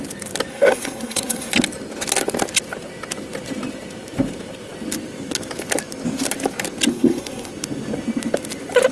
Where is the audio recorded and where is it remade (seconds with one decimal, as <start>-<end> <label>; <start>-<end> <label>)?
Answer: 0.0-0.5 recorded; 0.5-1.5 remade; 1.5-6.9 recorded; 6.9-7.5 remade; 7.5-8.9 recorded